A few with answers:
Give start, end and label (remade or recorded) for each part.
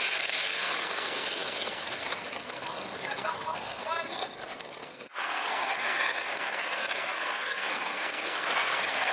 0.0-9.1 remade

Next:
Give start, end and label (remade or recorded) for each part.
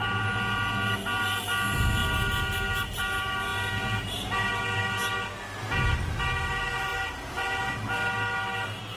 0.0-9.0 recorded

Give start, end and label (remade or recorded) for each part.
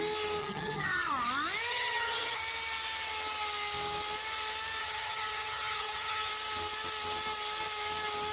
0.0-0.4 recorded; 0.4-1.1 remade; 1.1-1.7 recorded; 1.7-2.4 remade; 2.4-4.8 recorded; 4.8-6.3 remade; 6.3-8.3 recorded